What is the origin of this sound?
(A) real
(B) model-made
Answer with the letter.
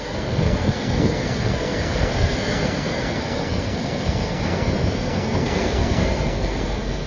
B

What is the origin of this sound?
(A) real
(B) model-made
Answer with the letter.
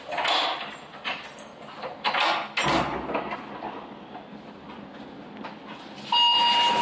A